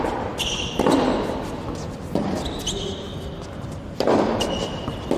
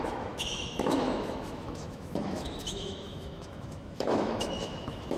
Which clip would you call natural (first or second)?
first